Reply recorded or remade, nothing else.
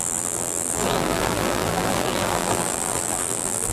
remade